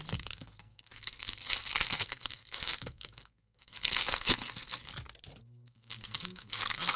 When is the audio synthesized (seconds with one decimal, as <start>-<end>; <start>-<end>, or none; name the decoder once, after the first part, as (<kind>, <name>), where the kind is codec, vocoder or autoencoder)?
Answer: 0.0-4.9 (codec, SNAC); 5.4-7.0